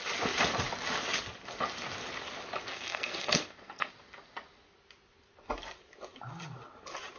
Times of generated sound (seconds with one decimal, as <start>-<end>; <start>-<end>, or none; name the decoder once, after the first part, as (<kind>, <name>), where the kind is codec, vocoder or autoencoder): 2.7-3.9 (codec, SNAC)